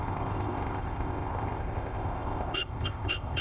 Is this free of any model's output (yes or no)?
no